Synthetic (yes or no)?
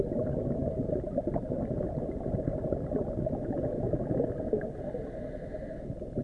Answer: no